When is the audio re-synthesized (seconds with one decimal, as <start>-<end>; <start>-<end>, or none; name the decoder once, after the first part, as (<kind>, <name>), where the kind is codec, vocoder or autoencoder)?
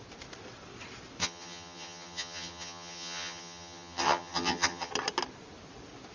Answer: 1.2-4.9 (vocoder, HiFi-GAN)